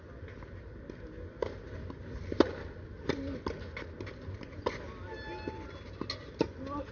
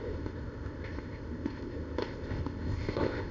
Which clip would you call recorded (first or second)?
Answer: first